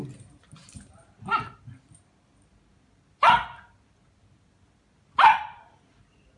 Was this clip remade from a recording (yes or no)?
no